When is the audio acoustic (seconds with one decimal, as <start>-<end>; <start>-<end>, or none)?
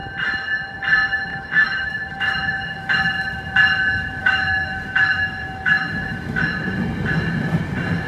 0.0-1.3; 3.0-4.2; 6.5-8.1